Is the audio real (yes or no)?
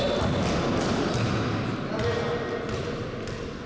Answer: yes